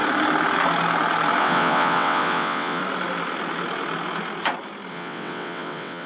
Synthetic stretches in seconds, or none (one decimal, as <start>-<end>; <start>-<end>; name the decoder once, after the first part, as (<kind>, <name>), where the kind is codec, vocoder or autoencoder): 1.4-2.8 (vocoder, WaveNeXt); 4.9-6.1